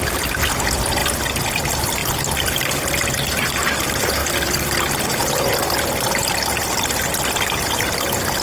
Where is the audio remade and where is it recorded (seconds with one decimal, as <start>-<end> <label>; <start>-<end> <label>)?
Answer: 0.0-4.2 recorded; 4.2-5.5 remade; 5.5-8.4 recorded